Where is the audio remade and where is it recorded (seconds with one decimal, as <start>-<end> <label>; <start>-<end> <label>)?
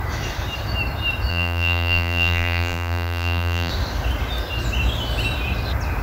0.0-1.3 recorded; 1.3-3.7 remade; 3.7-6.0 recorded